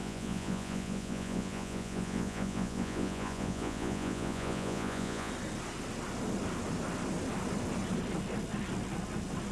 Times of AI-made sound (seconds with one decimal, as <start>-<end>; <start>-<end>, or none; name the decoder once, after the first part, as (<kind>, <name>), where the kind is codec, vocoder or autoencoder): 0.0-5.3 (vocoder, Vocos)